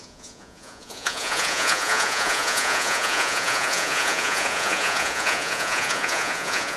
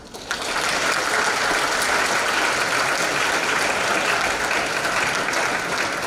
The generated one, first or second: first